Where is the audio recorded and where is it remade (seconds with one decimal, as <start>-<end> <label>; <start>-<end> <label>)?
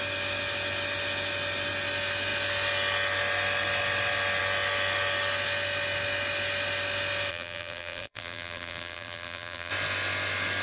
0.0-7.3 recorded; 7.3-9.7 remade; 9.7-10.6 recorded